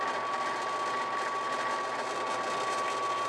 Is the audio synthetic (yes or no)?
no